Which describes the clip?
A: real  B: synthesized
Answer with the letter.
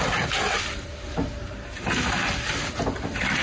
A